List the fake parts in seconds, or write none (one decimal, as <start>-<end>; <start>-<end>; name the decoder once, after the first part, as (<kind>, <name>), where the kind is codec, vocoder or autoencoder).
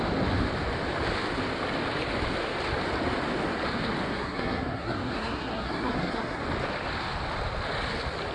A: 4.1-6.4 (codec, SNAC)